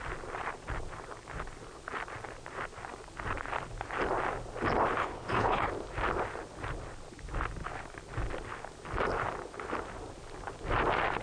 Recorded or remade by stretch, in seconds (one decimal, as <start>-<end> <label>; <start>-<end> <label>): 0.0-5.0 recorded; 5.0-5.7 remade; 5.7-11.2 recorded